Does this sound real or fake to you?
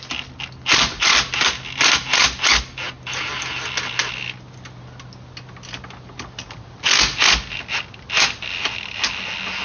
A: real